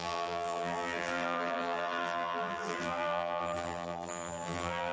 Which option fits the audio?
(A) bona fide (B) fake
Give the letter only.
B